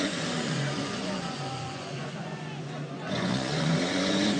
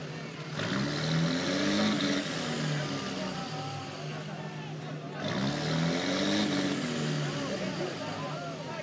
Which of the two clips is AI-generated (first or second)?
first